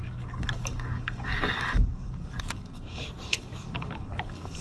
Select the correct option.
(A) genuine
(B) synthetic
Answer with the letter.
B